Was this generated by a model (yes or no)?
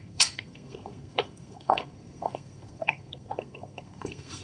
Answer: yes